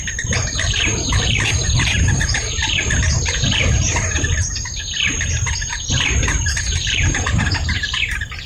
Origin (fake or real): fake